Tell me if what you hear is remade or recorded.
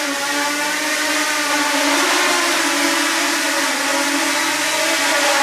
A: recorded